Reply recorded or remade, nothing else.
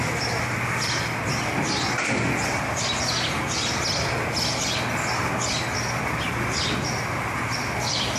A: recorded